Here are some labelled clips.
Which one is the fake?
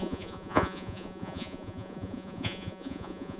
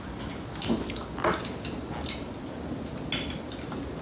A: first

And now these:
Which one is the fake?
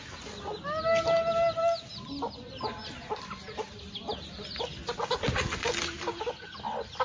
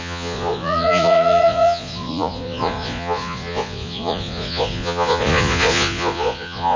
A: second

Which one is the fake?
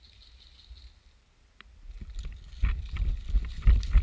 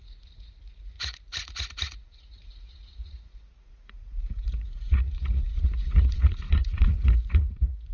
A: second